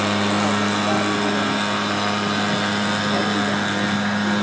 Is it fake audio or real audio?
real